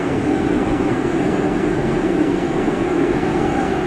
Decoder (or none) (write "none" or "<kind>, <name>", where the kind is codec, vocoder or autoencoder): codec, SNAC